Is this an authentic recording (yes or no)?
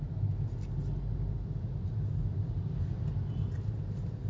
yes